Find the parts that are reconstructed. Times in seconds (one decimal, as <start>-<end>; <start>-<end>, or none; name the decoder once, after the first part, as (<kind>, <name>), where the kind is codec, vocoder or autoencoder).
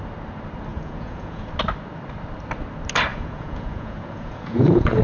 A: 0.7-1.5 (vocoder, Vocos); 3.1-5.0